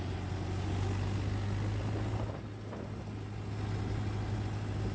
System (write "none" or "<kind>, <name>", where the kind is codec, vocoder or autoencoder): none